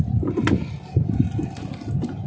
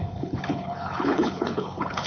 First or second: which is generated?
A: second